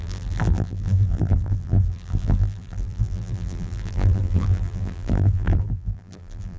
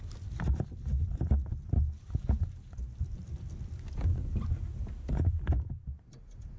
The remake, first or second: first